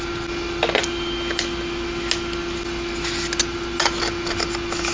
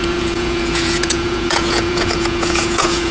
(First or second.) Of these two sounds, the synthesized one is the second